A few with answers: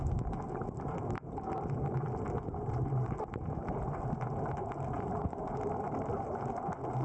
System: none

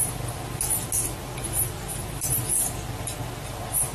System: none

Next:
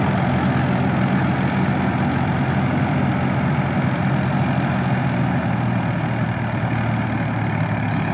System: none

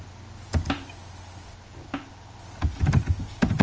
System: none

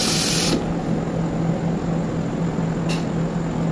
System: none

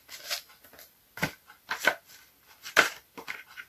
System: none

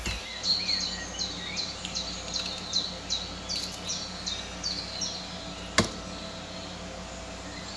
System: none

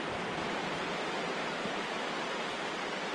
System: none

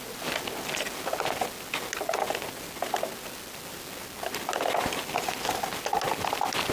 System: none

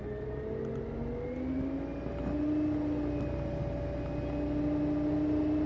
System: none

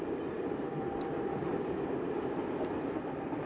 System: vocoder, BigVGAN v2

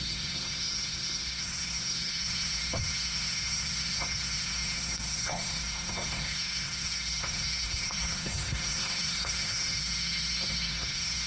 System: codec, SNAC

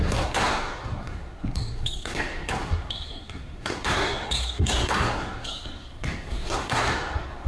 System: codec, SNAC